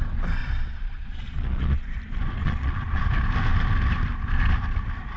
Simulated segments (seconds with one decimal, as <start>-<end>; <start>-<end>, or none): 0.4-2.0; 2.4-3.0